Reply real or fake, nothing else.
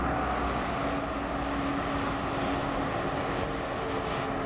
real